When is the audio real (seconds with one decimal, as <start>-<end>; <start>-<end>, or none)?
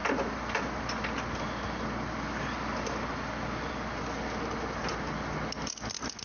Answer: 0.0-6.2